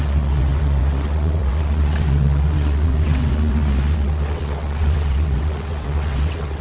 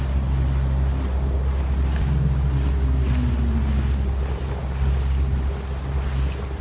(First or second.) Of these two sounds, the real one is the second